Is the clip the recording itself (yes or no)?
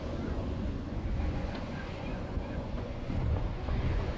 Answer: no